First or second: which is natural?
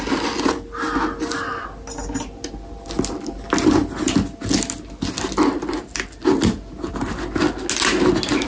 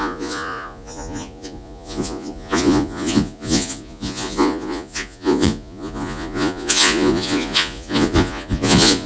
first